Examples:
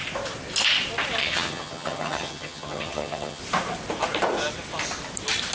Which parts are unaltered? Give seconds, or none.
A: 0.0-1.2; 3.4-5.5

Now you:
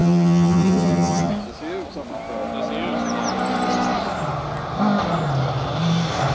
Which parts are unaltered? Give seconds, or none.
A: 1.3-6.3